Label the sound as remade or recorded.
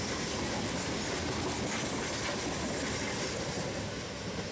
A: recorded